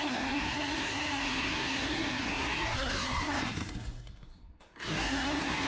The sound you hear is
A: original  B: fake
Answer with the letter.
B